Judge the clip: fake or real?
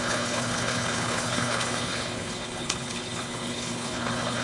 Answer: fake